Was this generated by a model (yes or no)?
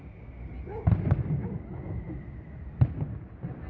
no